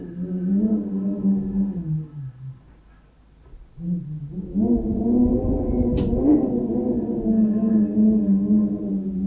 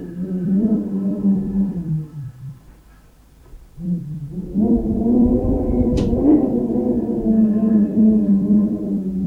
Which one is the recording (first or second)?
first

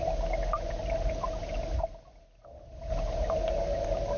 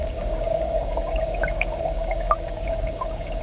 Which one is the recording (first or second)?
first